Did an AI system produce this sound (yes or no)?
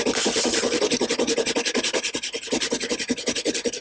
no